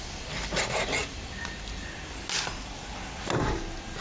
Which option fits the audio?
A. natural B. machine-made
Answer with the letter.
A